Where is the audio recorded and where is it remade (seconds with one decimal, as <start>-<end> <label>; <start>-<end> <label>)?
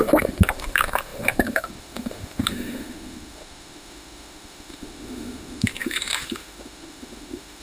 0.0-7.6 remade